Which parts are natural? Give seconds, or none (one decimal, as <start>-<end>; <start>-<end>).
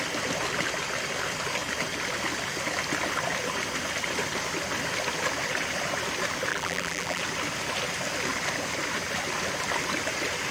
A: 0.0-6.5; 7.2-10.5